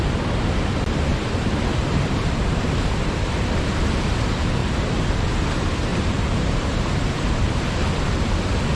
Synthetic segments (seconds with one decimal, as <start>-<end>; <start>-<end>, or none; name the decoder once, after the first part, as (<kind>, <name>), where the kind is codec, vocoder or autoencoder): 1.1-3.7 (vocoder, BigVGAN v2); 4.6-5.1; 5.9-7.8